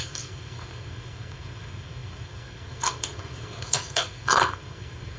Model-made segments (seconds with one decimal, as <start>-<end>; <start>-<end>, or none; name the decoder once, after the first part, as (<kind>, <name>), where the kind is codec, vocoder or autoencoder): 0.0-5.2 (codec, SNAC)